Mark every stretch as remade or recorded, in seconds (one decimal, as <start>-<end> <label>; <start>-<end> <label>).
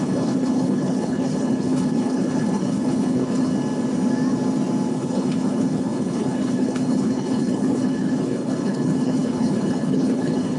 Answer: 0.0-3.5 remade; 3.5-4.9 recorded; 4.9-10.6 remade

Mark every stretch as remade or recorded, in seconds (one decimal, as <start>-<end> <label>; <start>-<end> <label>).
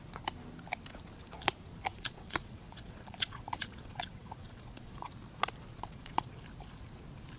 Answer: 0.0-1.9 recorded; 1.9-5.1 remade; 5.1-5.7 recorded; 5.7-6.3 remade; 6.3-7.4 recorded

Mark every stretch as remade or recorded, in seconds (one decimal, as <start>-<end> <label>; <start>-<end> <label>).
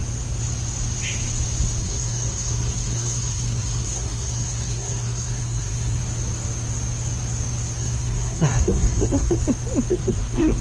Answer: 0.0-1.8 recorded; 1.8-6.0 remade; 6.0-7.8 recorded; 7.8-9.4 remade; 9.4-9.9 recorded; 9.9-10.6 remade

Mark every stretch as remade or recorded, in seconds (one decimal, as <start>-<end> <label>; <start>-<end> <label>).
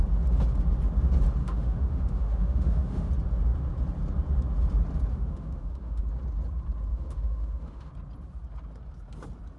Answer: 0.0-1.4 recorded; 1.4-3.1 remade; 3.1-5.1 recorded; 5.1-6.0 remade; 6.0-6.9 recorded; 6.9-7.9 remade; 7.9-9.6 recorded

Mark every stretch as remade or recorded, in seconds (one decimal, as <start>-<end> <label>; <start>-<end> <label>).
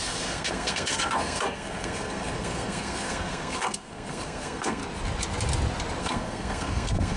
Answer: 0.0-4.8 remade; 4.8-6.0 recorded; 6.0-7.2 remade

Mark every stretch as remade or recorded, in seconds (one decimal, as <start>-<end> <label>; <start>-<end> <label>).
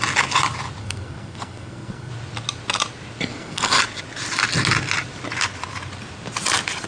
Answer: 0.0-0.8 recorded; 0.8-2.1 remade; 2.1-3.3 recorded; 3.3-3.8 remade; 3.8-6.9 recorded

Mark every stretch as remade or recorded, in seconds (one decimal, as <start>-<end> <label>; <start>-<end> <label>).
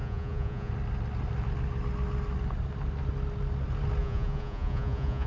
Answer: 0.0-0.7 remade; 0.7-4.0 recorded; 4.0-5.3 remade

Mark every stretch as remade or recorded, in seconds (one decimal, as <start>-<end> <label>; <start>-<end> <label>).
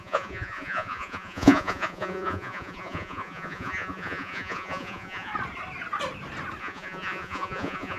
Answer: 0.0-5.3 remade; 5.3-6.6 recorded; 6.6-8.0 remade